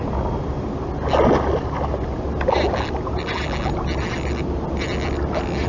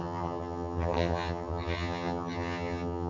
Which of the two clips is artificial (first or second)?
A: second